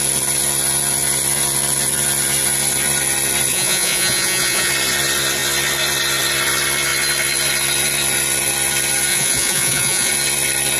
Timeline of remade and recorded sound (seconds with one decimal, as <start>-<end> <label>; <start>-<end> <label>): 0.0-3.5 recorded; 3.5-4.7 remade; 4.7-9.1 recorded; 9.1-10.1 remade; 10.1-10.8 recorded